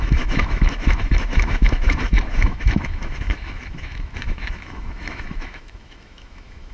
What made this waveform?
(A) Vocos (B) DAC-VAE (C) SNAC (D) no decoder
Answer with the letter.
B